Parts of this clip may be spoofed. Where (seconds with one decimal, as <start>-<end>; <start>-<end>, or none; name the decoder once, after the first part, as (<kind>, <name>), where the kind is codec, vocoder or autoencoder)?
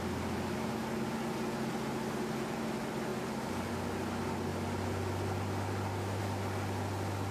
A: 3.1-3.7 (vocoder, BigVGAN v2)